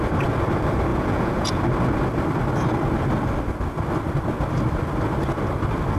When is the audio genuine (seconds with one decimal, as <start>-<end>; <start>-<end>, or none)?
0.0-0.9; 1.6-6.0